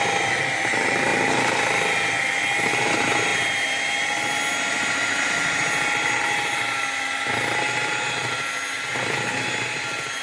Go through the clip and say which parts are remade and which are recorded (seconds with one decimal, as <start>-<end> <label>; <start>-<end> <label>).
0.0-10.2 recorded